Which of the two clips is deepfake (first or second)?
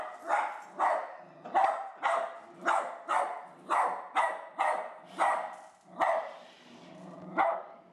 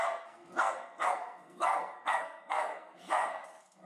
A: second